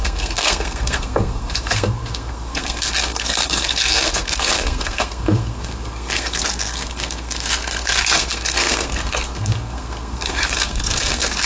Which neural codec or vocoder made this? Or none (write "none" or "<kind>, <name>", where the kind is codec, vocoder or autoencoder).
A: codec, SNAC